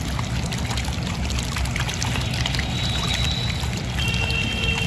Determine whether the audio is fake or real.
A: real